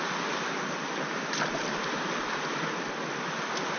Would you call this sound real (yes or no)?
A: yes